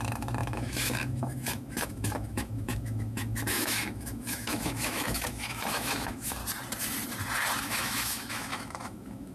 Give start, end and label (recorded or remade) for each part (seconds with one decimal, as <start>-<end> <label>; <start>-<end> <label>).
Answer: 0.0-6.4 remade; 6.4-7.6 recorded; 7.6-9.3 remade

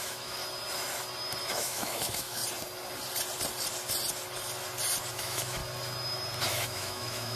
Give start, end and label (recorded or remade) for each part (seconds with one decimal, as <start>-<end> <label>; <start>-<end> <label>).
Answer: 0.0-0.4 remade; 0.4-1.5 recorded; 1.5-2.4 remade; 2.4-5.1 recorded; 5.1-5.6 remade; 5.6-6.5 recorded; 6.5-7.4 remade

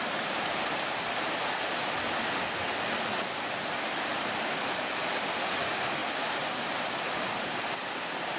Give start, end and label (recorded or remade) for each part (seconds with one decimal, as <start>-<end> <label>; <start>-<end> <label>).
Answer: 0.0-8.4 recorded

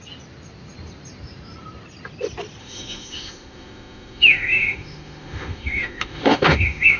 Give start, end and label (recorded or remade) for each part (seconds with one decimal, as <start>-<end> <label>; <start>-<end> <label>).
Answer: 0.0-2.6 recorded; 2.6-7.0 remade

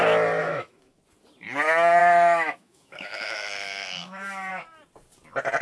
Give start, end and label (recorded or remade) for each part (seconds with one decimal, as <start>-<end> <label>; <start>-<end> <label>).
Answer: 0.0-0.4 recorded; 0.4-1.0 remade; 1.0-2.0 recorded; 2.0-4.5 remade; 4.5-5.6 recorded